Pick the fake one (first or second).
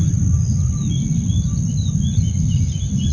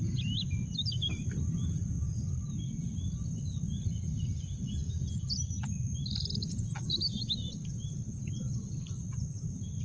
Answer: second